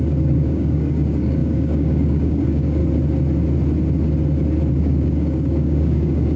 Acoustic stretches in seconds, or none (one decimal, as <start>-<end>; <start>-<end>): 2.8-4.8